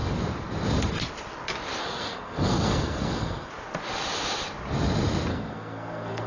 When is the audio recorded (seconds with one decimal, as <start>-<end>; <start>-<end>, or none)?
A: 0.0-1.8; 3.5-5.3